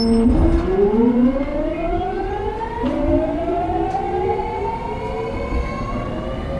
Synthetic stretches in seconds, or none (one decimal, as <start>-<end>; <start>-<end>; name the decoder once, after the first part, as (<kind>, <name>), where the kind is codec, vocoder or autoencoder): 1.5-4.6 (vocoder, BigVGAN v2)